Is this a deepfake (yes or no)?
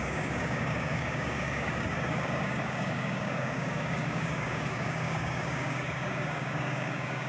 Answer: yes